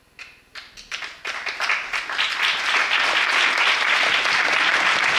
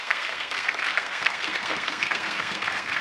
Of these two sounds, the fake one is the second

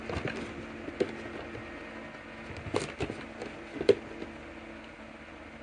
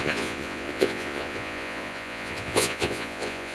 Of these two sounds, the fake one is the second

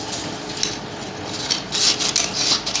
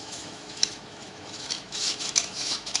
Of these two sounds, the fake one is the second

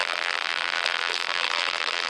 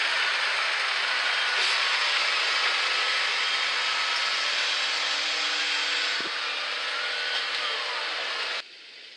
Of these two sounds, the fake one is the first